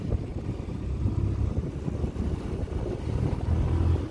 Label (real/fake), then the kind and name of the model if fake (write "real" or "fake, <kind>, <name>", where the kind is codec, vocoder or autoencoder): real